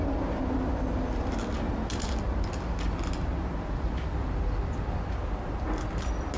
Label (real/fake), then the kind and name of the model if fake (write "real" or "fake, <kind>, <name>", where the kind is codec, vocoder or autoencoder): real